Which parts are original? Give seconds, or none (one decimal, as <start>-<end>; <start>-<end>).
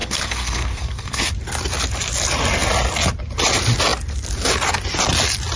1.3-5.6